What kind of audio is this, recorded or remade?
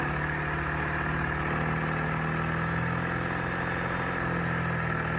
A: recorded